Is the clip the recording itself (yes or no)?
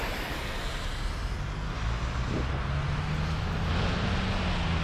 yes